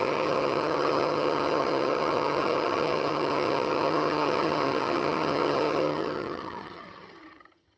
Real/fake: fake